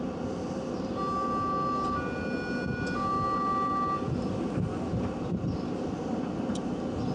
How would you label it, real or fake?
real